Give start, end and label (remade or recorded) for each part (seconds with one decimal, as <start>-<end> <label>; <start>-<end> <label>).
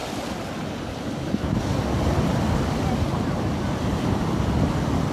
0.0-5.1 recorded